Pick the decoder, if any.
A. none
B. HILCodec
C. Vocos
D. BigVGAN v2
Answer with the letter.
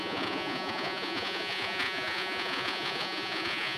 C